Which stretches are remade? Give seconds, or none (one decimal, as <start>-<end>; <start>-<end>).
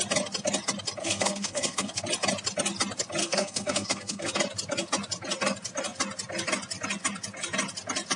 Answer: 1.0-2.0; 3.2-4.3